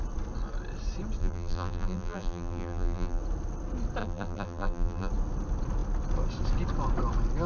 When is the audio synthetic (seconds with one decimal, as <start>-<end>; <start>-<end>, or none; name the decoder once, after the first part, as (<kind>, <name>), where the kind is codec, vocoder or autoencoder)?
1.2-3.2 (vocoder, BigVGAN v2); 4.0-5.1